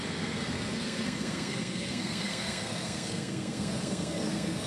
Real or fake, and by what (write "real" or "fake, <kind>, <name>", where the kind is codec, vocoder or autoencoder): fake, codec, SNAC